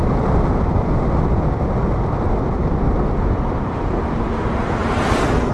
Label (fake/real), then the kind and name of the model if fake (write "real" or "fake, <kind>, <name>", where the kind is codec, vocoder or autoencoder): real